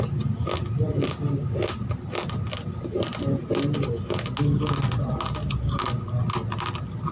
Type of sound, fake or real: real